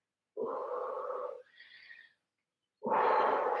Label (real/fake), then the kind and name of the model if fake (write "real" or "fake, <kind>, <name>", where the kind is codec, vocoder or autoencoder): real